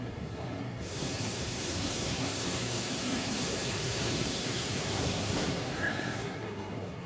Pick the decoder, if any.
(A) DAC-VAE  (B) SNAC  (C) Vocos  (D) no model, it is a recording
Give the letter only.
B